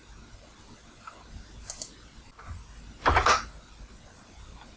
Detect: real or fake real